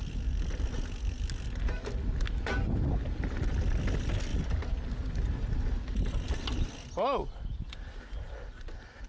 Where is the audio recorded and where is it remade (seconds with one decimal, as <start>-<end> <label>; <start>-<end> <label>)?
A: 0.0-9.1 recorded